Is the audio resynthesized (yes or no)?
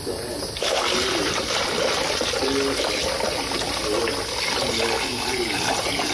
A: yes